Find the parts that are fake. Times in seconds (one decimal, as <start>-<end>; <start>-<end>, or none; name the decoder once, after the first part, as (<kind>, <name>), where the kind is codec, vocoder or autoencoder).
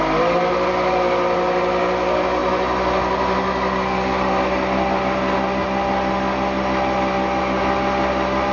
none